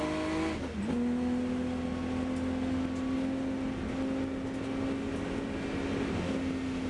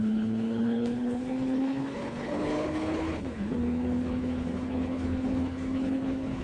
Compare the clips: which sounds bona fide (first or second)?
first